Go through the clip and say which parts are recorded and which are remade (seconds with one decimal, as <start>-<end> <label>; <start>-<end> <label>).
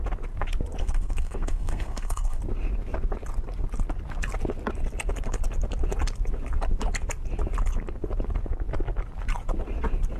0.0-0.8 recorded; 0.8-2.4 remade; 2.4-10.2 recorded